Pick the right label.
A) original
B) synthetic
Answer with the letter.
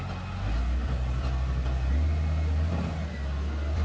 A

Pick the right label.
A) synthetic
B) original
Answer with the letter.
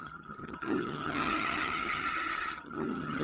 A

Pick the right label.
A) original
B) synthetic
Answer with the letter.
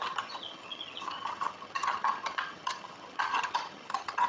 B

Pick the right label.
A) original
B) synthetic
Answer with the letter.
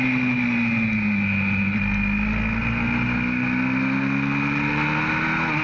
A